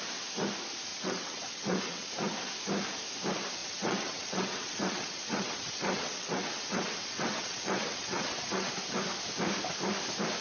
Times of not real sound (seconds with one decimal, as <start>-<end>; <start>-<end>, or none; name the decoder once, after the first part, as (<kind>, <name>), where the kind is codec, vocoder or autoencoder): 0.9-2.1 (vocoder, WaveNeXt); 3.6-8.7

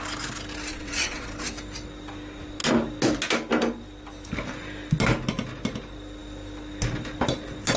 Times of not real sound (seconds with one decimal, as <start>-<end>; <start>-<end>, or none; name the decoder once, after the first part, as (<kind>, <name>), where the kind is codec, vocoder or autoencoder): 0.7-1.3 (vocoder, WaveNeXt)

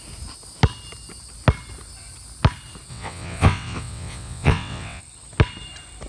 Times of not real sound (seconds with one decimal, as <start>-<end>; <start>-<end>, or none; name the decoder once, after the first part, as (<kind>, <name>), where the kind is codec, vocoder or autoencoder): 2.9-5.0 (vocoder, WaveNeXt)

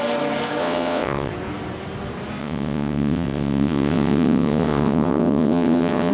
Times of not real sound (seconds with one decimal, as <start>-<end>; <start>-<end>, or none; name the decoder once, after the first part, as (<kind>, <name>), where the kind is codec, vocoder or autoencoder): 0.6-1.3 (vocoder, WaveNeXt); 2.4-6.1

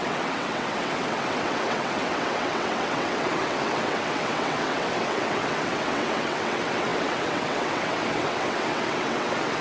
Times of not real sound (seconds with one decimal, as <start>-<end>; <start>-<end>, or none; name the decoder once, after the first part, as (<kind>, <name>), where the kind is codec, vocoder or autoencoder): 0.0-9.6 (vocoder, WaveNeXt)

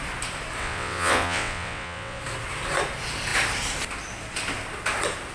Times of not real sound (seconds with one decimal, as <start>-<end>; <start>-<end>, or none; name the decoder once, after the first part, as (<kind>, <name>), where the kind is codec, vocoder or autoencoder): 0.6-2.2 (vocoder, WaveNeXt)

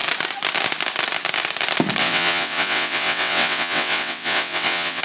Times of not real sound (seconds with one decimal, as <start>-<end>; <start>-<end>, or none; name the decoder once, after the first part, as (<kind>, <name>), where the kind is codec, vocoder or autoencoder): 2.0-5.0 (vocoder, WaveNeXt)